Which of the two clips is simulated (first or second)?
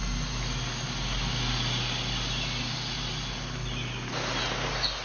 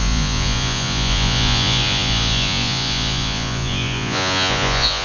second